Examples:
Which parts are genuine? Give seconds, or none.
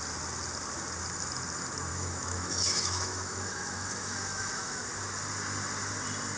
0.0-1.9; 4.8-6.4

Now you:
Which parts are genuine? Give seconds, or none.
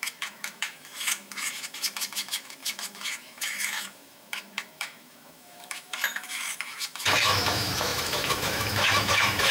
none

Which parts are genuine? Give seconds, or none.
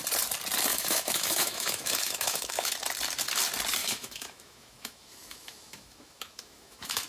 0.0-0.7; 2.7-3.8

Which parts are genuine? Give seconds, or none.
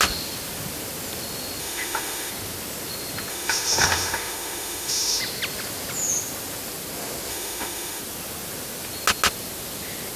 0.0-1.6; 2.3-3.3; 5.2-7.3; 8.0-10.2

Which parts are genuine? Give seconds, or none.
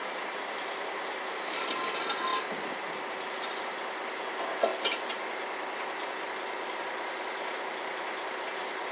0.0-8.9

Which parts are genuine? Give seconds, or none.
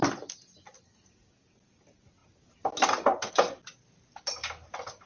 0.0-5.1